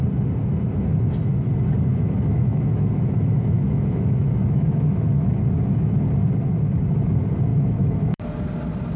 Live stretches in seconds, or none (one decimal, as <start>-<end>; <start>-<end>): 0.0-1.9; 5.3-7.5; 8.2-9.0